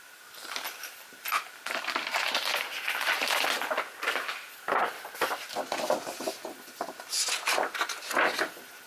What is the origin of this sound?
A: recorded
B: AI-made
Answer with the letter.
A